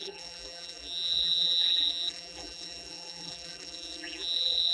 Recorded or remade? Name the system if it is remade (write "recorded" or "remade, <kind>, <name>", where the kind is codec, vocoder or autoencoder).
remade, vocoder, BigVGAN v2